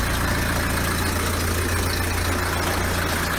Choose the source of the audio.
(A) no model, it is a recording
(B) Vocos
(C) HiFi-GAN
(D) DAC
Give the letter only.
A